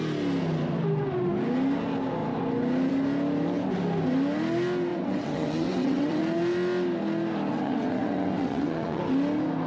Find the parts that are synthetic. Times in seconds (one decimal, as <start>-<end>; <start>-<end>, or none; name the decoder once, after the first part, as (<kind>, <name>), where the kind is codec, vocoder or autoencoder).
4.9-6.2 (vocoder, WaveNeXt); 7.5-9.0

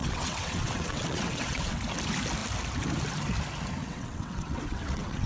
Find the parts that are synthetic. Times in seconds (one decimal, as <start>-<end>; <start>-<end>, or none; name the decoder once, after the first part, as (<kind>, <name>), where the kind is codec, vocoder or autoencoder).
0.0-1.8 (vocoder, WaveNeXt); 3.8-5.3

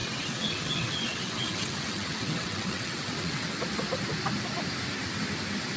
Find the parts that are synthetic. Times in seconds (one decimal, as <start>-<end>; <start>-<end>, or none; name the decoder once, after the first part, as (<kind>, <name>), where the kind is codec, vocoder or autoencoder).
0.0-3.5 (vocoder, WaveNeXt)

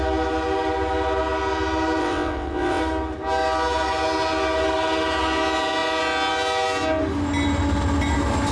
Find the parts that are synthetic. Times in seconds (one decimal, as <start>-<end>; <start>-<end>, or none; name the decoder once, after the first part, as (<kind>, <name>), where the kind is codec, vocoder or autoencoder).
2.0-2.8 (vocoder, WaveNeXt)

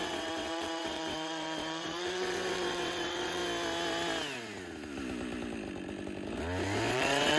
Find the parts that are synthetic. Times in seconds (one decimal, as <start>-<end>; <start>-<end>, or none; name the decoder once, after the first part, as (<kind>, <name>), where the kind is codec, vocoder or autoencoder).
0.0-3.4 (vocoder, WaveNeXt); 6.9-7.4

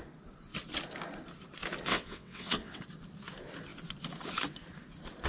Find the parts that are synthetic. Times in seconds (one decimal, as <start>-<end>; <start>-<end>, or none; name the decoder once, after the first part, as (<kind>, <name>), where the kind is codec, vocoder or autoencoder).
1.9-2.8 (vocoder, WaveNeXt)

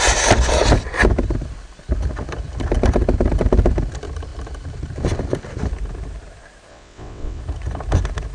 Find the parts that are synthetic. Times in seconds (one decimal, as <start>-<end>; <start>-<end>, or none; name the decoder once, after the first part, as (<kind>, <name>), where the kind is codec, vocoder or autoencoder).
6.7-7.4 (vocoder, WaveNeXt)